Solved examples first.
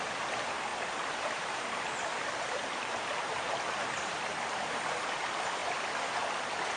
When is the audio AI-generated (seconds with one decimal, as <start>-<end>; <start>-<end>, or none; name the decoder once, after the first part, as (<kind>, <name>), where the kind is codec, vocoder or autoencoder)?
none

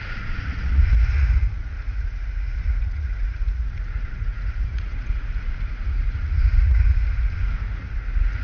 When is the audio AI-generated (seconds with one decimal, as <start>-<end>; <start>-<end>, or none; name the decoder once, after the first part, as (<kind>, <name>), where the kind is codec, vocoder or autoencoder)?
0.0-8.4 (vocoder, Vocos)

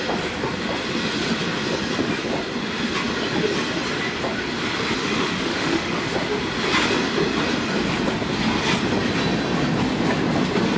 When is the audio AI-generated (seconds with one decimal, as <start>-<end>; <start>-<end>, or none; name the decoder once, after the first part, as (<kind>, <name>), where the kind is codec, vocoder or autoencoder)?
5.0-6.0 (autoencoder, DAC-VAE)

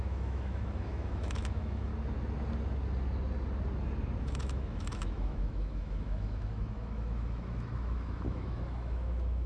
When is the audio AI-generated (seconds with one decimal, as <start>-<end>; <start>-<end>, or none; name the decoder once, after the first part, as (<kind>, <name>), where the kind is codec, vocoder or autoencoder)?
0.0-1.9 (autoencoder, DAC-VAE); 4.2-9.5

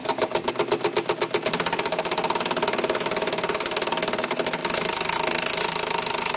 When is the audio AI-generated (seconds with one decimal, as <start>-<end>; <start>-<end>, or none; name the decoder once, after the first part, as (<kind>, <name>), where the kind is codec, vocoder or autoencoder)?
0.0-0.5 (codec, DAC)